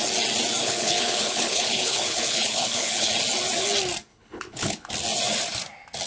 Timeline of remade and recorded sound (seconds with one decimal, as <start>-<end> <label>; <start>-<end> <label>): 0.0-0.6 recorded; 0.6-3.1 remade; 3.1-4.1 recorded; 4.1-4.9 remade; 4.9-6.1 recorded